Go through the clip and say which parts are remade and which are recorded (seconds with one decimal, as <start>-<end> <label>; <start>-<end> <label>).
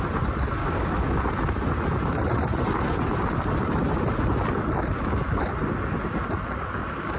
0.0-0.6 recorded; 0.6-1.2 remade; 1.2-7.2 recorded